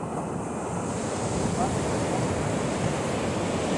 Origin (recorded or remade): recorded